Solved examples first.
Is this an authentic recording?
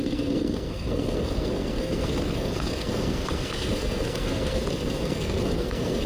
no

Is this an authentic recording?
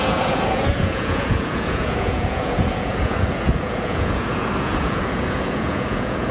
no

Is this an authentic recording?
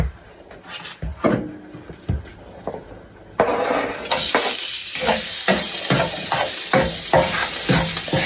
yes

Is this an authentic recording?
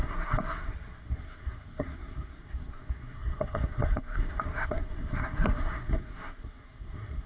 no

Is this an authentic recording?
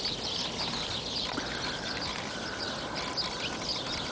yes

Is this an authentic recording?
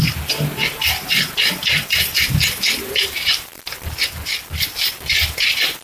yes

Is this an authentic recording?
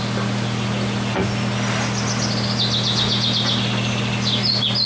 yes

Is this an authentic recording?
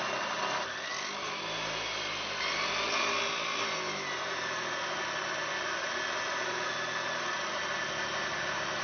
yes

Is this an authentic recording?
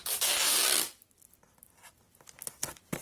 yes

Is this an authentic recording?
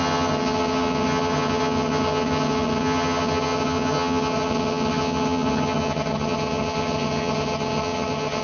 no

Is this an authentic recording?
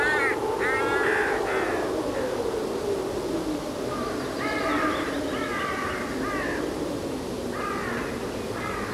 yes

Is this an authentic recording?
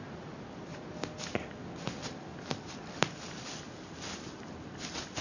yes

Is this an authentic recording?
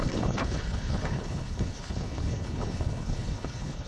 no